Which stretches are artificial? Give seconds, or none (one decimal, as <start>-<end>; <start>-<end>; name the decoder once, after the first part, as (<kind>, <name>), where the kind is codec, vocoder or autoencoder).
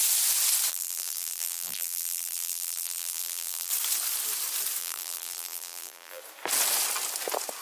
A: 0.7-3.7 (vocoder, BigVGAN v2); 4.8-6.2